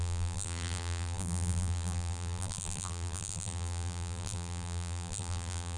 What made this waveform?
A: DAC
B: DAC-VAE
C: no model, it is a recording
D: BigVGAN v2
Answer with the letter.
D